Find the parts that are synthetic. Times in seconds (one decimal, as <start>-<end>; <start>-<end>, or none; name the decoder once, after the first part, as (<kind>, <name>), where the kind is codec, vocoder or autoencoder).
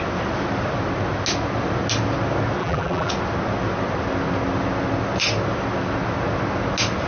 2.6-3.1 (vocoder, BigVGAN v2)